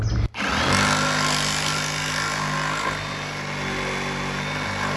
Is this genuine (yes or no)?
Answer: yes